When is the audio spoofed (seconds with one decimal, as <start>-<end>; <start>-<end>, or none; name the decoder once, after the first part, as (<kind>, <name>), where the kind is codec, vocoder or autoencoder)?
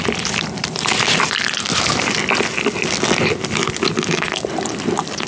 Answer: none